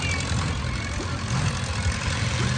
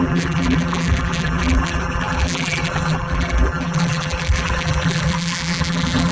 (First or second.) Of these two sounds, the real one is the first